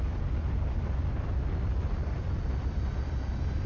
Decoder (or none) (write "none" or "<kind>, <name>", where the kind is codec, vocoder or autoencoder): none